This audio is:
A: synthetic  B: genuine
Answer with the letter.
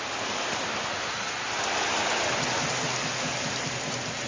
B